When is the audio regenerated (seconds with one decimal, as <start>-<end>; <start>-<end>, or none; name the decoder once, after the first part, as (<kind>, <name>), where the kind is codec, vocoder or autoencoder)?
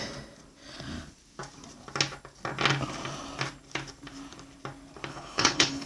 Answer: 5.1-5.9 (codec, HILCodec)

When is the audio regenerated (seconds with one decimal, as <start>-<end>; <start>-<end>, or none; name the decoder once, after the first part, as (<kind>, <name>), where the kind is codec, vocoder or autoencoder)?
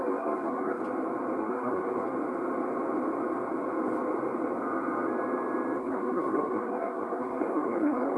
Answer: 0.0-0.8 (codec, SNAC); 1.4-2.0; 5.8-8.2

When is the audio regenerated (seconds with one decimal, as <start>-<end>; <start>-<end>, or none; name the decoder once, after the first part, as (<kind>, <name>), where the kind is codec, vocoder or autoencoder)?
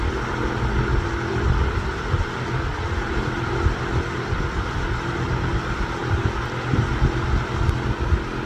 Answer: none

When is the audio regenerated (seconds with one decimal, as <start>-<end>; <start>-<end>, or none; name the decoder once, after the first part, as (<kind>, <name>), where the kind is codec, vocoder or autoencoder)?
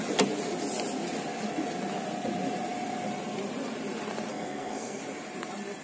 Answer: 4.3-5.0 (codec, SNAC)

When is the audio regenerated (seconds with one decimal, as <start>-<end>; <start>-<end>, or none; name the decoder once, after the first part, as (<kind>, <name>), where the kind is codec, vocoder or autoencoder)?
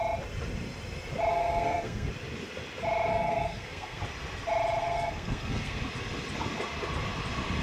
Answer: 1.3-2.1 (codec, SNAC); 3.1-4.0; 4.8-5.8